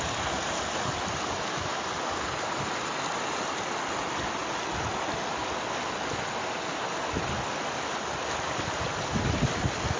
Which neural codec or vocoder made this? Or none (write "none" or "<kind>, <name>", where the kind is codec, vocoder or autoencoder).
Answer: none